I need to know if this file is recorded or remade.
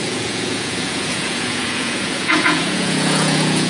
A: remade